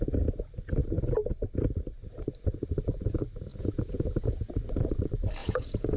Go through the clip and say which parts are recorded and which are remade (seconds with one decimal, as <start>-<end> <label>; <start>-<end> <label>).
0.0-3.5 recorded; 3.5-4.5 remade; 4.5-5.4 recorded; 5.4-6.0 remade

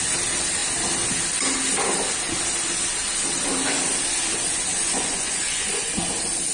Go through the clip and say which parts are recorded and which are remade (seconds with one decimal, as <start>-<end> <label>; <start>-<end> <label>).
0.0-4.7 recorded; 4.7-5.9 remade; 5.9-6.5 recorded

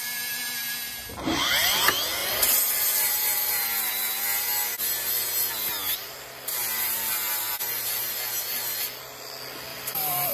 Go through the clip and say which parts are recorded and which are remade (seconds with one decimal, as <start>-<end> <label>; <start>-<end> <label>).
0.0-2.2 recorded; 2.2-3.9 remade; 3.9-6.6 recorded; 6.6-8.1 remade; 8.1-9.7 recorded; 9.7-10.3 remade

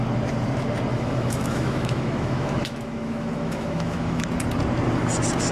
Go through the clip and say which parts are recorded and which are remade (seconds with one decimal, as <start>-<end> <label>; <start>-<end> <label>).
0.0-0.9 recorded; 0.9-4.2 remade; 4.2-5.5 recorded